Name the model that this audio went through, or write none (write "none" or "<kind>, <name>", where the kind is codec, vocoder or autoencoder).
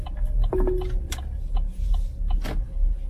none